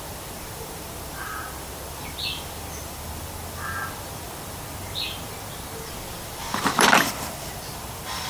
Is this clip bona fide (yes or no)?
no